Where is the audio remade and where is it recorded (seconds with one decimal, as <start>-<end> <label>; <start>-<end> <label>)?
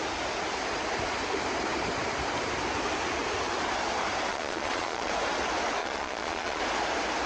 0.0-4.3 recorded; 4.3-5.1 remade; 5.1-5.8 recorded; 5.8-6.6 remade; 6.6-7.3 recorded